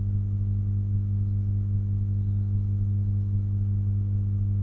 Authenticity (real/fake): real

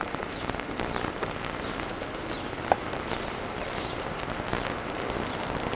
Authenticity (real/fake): fake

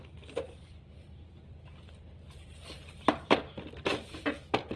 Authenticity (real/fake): real